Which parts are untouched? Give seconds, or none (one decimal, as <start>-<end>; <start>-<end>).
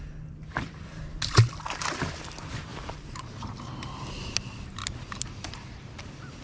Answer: 0.0-0.5; 1.0-2.7; 4.1-6.4